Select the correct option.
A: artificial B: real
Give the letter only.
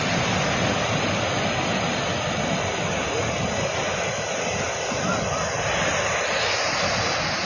B